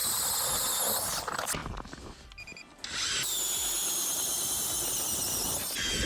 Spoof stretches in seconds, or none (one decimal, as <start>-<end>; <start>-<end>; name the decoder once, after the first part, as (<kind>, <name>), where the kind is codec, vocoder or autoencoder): none